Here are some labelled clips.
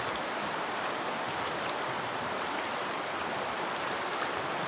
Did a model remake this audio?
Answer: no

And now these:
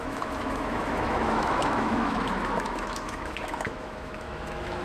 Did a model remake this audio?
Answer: yes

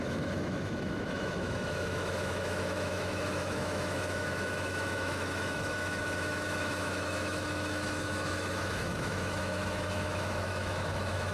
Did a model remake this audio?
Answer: yes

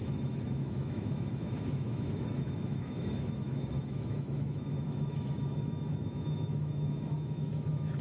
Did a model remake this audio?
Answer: yes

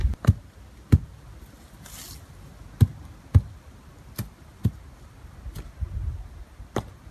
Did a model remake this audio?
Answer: no